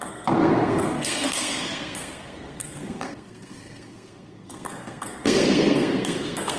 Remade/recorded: remade